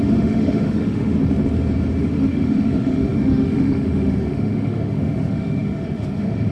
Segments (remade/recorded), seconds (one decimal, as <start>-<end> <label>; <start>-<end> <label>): 0.0-1.2 remade; 1.2-2.0 recorded; 2.0-6.5 remade